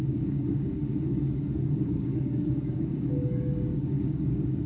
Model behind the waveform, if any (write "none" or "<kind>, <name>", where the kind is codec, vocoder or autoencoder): codec, DAC